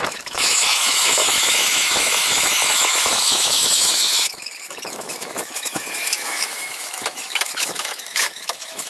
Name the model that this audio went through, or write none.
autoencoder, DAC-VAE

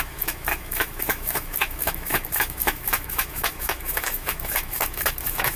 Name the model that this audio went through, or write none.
autoencoder, DAC-VAE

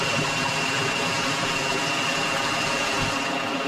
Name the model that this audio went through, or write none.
none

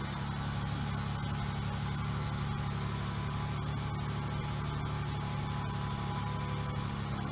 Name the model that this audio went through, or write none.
none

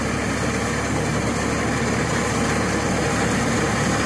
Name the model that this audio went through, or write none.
none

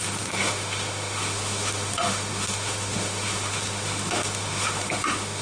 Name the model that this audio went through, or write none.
autoencoder, DAC-VAE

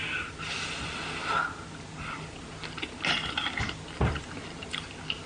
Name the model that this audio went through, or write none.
none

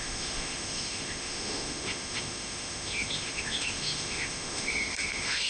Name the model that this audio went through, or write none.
autoencoder, DAC-VAE